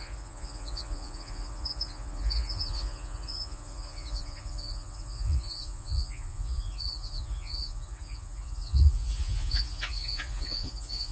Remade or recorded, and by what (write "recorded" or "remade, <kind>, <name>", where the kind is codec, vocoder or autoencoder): remade, vocoder, Vocos